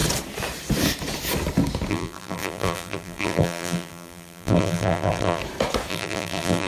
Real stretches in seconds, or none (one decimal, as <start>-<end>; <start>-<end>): 0.0-1.9; 5.4-5.9